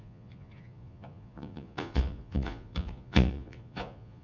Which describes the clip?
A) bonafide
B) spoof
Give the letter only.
B